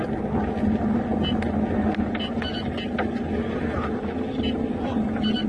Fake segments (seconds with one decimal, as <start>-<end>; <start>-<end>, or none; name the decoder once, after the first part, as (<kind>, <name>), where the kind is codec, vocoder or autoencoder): none